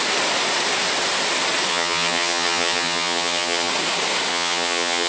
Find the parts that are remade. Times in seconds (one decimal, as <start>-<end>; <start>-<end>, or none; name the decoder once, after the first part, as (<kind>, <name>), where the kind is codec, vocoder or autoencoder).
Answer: 1.7-3.7 (vocoder, HiFi-GAN); 4.3-5.1